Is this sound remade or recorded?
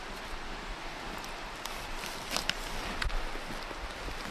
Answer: recorded